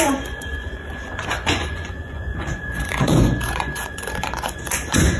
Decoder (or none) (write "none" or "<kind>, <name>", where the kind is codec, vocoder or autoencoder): vocoder, Vocos